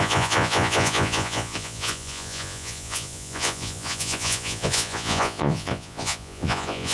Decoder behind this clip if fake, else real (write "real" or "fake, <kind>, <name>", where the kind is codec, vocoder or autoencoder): fake, vocoder, Vocos